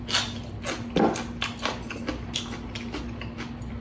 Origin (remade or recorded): recorded